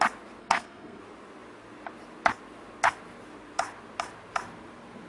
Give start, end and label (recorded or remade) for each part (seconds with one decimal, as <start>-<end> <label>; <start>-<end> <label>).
0.0-0.4 recorded; 0.4-1.0 remade; 1.0-5.1 recorded